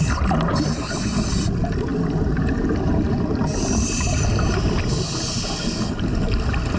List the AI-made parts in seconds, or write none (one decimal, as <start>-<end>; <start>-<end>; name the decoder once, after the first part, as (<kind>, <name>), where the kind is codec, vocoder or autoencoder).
none